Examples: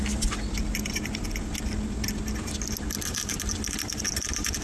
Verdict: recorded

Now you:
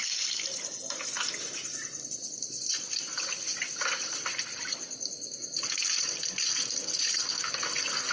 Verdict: recorded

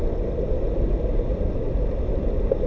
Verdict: recorded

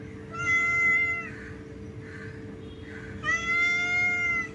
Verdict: recorded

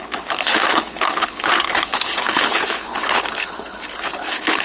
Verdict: remade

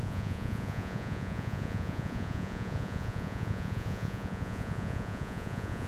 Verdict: remade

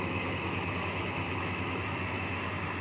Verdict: remade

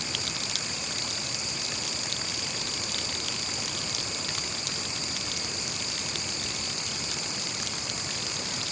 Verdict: recorded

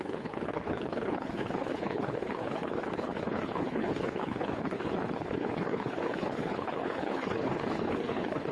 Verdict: remade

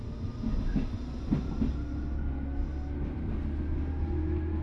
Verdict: recorded